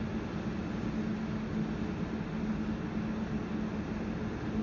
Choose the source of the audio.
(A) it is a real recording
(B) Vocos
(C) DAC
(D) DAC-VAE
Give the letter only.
A